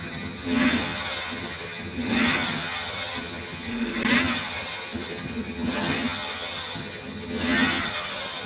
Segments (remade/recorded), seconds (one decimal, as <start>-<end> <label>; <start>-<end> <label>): 0.0-3.7 remade; 3.7-4.2 recorded; 4.2-8.5 remade